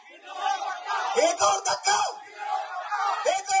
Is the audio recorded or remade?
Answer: recorded